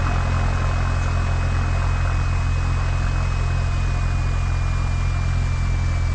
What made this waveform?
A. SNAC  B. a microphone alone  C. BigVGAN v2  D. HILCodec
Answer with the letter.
B